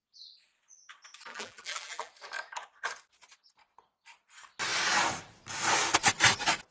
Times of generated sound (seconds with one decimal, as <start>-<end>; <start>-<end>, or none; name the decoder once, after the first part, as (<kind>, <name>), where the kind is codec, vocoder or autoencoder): 1.3-2.1 (vocoder, BigVGAN v2)

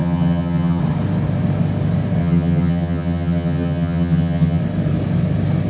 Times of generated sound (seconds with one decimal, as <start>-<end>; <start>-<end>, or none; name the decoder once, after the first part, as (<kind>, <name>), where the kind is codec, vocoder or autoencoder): 0.0-0.8 (vocoder, HiFi-GAN); 2.2-4.6

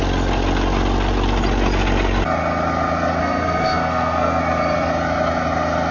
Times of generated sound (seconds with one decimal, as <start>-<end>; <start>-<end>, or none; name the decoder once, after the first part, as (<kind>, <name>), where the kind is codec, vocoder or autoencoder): 3.2-4.4 (codec, SNAC)

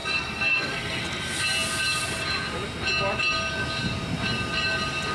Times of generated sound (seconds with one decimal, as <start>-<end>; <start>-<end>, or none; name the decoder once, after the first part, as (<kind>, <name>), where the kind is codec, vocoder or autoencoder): 0.0-1.0 (codec, SNAC)

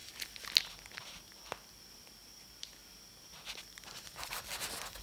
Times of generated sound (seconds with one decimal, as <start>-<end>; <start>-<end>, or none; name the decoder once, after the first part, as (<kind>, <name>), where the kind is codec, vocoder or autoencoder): 1.8-2.8 (vocoder, BigVGAN v2)

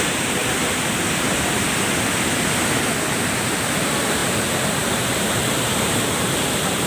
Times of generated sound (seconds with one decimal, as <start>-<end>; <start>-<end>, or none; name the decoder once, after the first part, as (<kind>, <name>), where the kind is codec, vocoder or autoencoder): 0.0-0.4 (vocoder, BigVGAN v2); 3.1-6.9

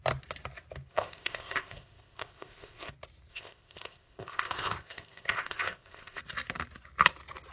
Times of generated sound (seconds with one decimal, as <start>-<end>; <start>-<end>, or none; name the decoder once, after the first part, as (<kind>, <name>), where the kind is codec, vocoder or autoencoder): 0.9-2.9 (codec, ZipCodec); 3.3-6.2

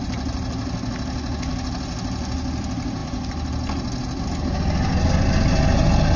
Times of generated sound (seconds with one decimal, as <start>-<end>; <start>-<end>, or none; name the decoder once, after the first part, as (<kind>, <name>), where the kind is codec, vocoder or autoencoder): none